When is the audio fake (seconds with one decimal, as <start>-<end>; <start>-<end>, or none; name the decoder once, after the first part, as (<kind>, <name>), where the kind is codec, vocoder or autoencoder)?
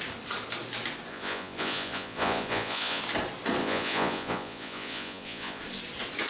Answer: 1.1-3.0 (vocoder, Vocos); 3.6-5.6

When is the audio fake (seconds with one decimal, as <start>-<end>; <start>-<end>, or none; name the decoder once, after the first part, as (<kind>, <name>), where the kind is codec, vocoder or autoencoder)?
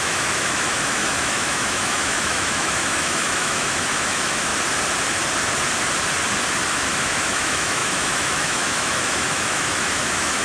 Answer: 0.0-4.5 (autoencoder, DAC-VAE); 6.7-10.4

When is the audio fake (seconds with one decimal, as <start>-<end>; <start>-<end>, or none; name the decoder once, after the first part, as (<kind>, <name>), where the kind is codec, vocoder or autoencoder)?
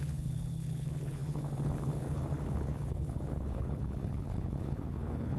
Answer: 0.0-5.4 (codec, HILCodec)